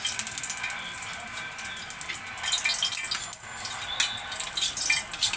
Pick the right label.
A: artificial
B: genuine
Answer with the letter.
B